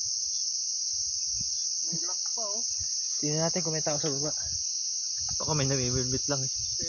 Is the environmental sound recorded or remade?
recorded